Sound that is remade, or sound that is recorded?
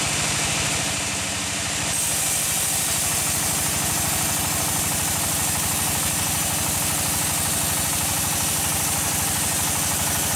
recorded